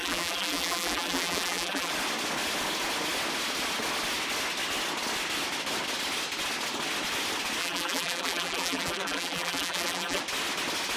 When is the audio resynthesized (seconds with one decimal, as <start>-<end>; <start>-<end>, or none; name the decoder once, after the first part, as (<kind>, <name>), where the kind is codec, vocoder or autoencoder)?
0.0-1.9 (vocoder, BigVGAN v2); 7.6-10.2